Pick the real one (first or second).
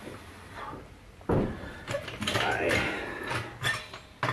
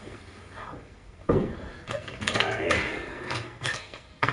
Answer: first